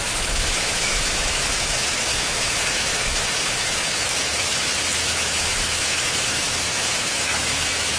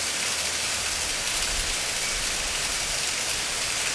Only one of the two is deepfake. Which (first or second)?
first